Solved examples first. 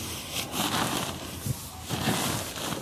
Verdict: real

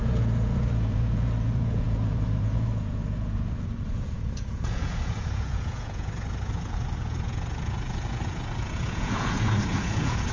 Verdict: fake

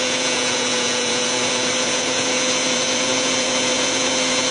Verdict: fake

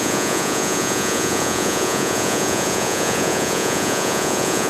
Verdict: fake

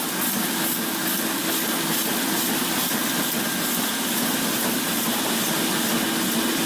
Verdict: real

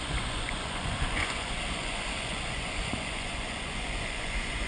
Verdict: fake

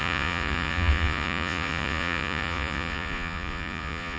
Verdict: fake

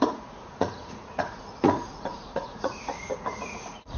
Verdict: fake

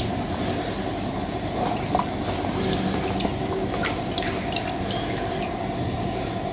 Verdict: real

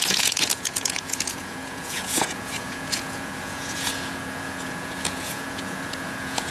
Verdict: fake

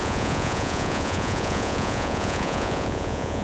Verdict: fake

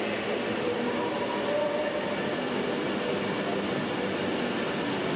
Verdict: real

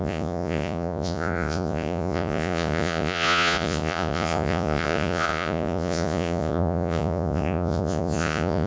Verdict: fake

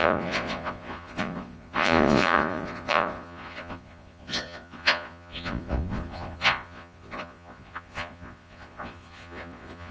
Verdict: fake